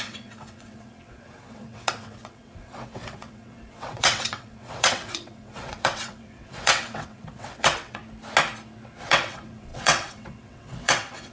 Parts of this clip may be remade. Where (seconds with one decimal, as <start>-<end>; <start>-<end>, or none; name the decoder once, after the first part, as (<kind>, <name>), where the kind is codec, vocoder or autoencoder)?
0.0-8.0 (vocoder, WaveNeXt); 9.0-11.3